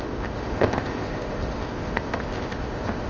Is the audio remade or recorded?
remade